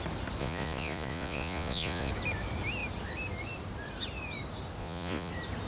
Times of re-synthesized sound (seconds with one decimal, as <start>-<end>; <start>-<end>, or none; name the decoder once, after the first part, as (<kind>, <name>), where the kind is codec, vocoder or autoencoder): 0.4-2.1 (vocoder, Vocos); 4.8-5.3